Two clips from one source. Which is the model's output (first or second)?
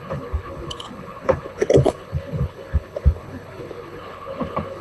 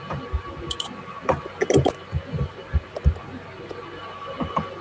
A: first